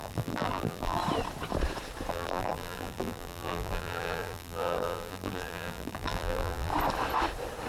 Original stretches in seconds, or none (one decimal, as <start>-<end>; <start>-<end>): 1.0-2.1; 6.7-7.7